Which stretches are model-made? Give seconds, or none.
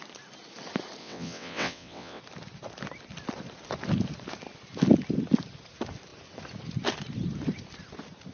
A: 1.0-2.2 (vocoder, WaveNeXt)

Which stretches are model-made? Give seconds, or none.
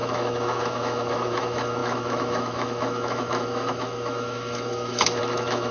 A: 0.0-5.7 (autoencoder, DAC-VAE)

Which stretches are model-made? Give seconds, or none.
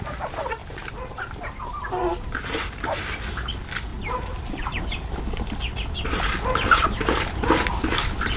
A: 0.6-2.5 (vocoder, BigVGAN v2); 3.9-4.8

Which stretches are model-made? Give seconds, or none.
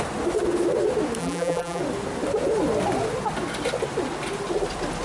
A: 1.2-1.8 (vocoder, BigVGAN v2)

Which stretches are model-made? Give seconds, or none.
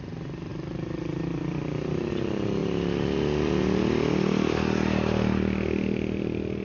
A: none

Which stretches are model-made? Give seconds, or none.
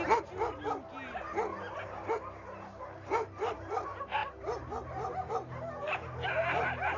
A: none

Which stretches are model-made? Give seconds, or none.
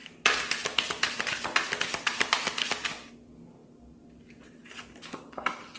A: none